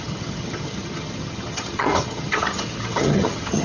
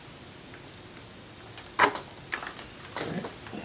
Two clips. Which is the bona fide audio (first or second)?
second